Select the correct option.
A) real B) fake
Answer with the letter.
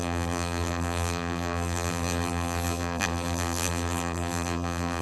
B